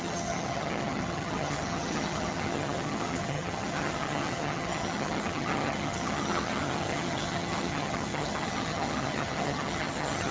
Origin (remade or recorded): remade